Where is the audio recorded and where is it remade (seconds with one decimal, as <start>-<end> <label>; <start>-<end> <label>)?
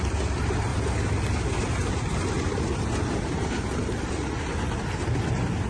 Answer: 0.0-5.7 recorded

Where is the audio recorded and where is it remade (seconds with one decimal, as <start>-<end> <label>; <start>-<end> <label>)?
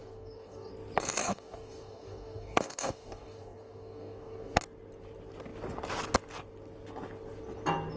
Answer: 0.0-0.7 remade; 0.7-1.2 recorded; 1.2-4.6 remade; 4.6-8.0 recorded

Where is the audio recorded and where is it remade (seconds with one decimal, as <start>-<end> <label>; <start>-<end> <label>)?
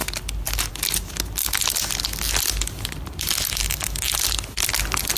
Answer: 0.0-5.2 recorded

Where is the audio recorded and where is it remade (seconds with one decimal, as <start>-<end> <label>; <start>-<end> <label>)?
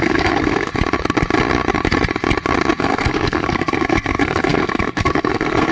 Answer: 0.0-0.7 remade; 0.7-2.8 recorded; 2.8-5.7 remade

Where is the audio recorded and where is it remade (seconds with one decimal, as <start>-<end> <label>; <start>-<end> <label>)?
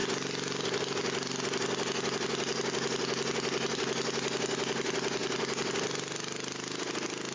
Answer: 0.0-7.3 recorded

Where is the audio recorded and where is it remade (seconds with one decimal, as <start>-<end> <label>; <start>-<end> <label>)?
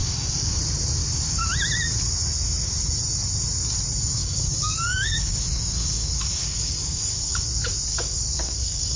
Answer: 0.0-0.6 remade; 0.6-4.2 recorded; 4.2-7.5 remade; 7.5-7.9 recorded; 7.9-9.0 remade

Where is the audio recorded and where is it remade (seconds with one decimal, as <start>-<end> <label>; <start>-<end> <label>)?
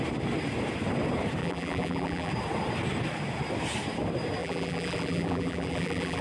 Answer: 0.0-1.4 recorded; 1.4-2.3 remade; 2.3-4.4 recorded; 4.4-6.2 remade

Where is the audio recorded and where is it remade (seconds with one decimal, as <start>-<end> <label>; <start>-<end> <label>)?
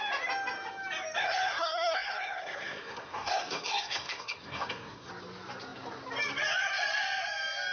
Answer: 0.0-1.2 recorded; 1.2-5.1 remade; 5.1-7.7 recorded